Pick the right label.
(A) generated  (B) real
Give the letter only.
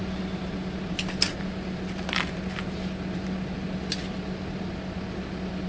B